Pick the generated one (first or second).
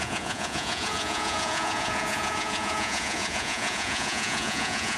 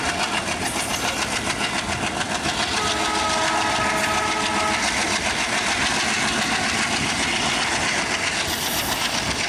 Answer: first